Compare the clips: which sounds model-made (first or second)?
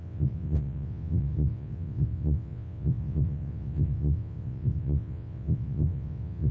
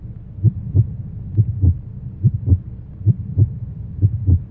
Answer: first